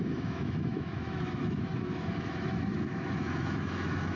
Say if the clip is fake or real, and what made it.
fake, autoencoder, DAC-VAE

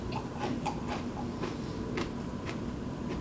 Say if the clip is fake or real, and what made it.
real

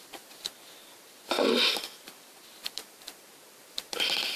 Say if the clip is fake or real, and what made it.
fake, vocoder, BigVGAN v2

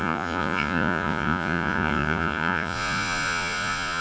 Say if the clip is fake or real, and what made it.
fake, vocoder, Vocos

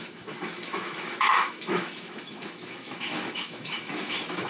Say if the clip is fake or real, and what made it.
fake, autoencoder, DAC-VAE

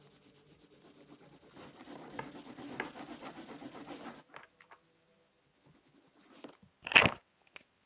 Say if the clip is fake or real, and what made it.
real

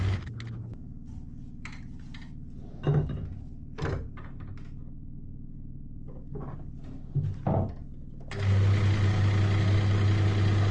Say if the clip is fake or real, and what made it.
real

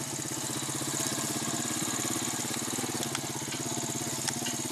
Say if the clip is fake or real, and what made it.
real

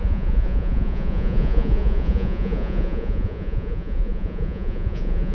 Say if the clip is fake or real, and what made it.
fake, vocoder, Vocos